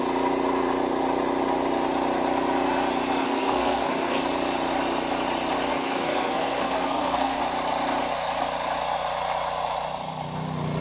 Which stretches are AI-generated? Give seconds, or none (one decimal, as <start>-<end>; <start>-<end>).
3.2-4.2; 5.7-7.4